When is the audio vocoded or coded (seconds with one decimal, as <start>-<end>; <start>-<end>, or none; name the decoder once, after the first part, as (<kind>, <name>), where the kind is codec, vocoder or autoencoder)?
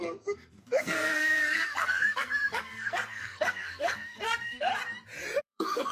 0.0-4.7 (codec, SNAC); 5.4-5.9